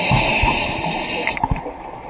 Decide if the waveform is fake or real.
real